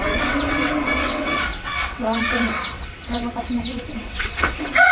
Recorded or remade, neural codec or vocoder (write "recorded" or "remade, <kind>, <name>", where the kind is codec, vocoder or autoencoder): remade, vocoder, WaveNeXt